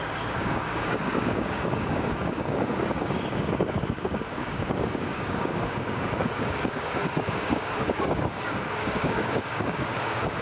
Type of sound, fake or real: fake